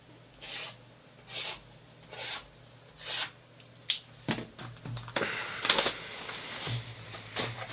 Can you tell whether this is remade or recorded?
recorded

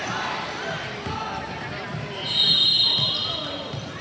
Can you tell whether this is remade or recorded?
recorded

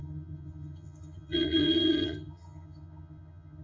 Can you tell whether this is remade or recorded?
remade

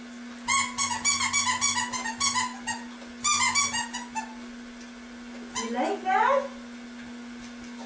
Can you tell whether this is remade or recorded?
recorded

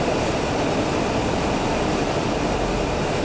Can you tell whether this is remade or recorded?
recorded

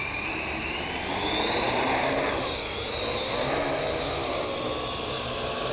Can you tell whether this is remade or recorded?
recorded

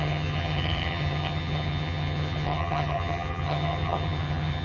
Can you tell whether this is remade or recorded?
remade